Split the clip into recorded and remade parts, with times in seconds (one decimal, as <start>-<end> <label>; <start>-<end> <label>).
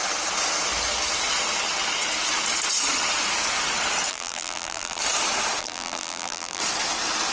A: 0.0-4.1 recorded; 4.1-5.0 remade; 5.0-5.6 recorded; 5.6-6.6 remade; 6.6-7.3 recorded